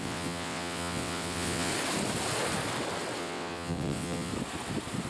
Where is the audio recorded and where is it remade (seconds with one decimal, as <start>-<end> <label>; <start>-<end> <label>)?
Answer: 0.0-1.7 remade; 1.7-3.2 recorded; 3.2-4.3 remade; 4.3-5.1 recorded